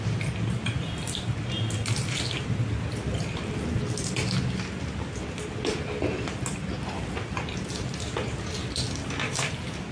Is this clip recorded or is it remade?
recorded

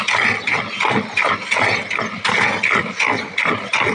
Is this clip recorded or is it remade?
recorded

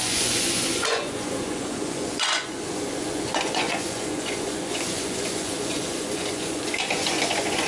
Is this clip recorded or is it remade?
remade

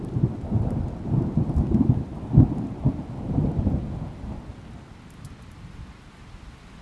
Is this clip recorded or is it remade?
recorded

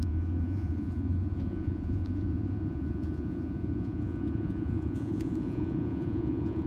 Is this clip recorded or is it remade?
remade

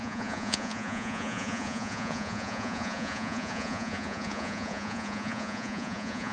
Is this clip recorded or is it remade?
remade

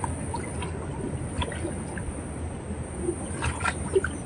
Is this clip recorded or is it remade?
recorded